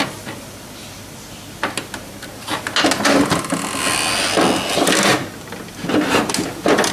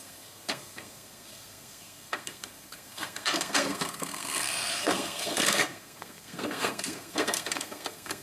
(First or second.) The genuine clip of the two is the first